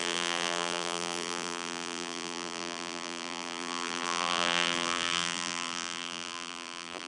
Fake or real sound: fake